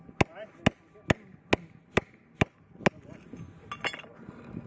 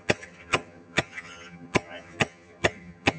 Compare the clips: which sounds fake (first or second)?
second